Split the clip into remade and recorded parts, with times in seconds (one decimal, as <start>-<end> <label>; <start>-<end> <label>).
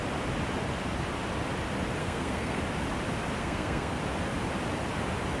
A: 0.0-2.0 recorded; 2.0-2.6 remade; 2.6-3.4 recorded; 3.4-4.0 remade; 4.0-5.4 recorded